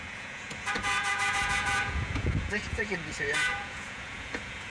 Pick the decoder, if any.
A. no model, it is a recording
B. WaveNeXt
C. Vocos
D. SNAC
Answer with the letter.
C